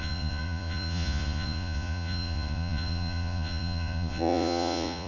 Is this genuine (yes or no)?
no